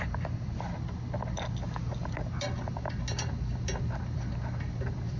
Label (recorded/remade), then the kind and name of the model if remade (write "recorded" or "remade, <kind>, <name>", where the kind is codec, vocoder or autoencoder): recorded